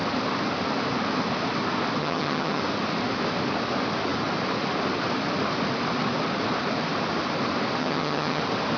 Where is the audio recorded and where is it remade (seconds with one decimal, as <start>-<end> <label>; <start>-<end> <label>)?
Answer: 0.0-2.0 recorded; 2.0-2.6 remade; 2.6-7.8 recorded; 7.8-8.4 remade; 8.4-8.8 recorded